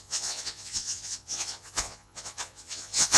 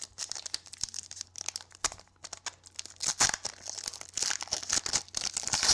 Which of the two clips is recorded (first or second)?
second